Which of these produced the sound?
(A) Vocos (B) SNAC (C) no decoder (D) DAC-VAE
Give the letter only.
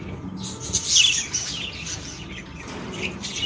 C